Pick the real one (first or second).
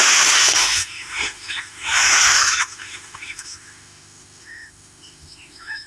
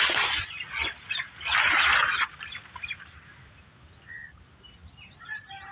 second